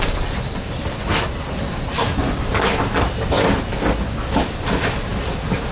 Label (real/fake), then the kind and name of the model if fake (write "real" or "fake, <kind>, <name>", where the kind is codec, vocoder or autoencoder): real